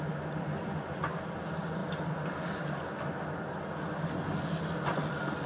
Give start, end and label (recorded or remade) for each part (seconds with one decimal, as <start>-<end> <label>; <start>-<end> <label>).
0.0-5.5 recorded